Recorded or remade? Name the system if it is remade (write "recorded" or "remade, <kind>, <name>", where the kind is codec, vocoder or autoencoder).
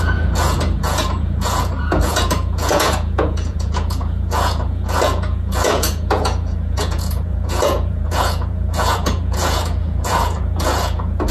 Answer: remade, vocoder, Vocos